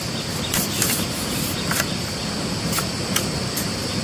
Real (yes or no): no